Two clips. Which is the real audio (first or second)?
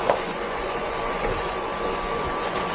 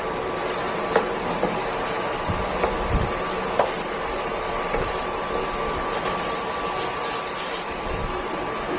second